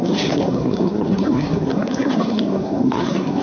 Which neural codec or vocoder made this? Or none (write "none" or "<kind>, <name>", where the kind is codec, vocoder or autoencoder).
codec, SNAC